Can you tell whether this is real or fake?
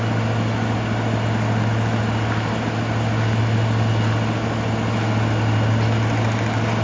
real